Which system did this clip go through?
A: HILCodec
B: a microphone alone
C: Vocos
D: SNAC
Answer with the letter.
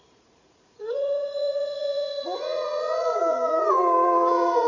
C